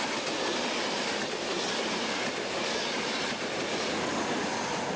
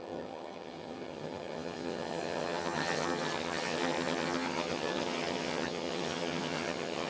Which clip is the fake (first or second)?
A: second